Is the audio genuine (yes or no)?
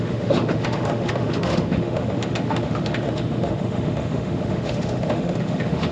no